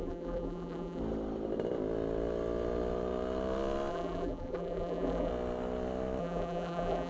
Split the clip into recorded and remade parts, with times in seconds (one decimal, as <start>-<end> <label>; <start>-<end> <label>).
0.0-1.0 remade; 1.0-3.9 recorded; 3.9-5.3 remade; 5.3-6.2 recorded; 6.2-7.1 remade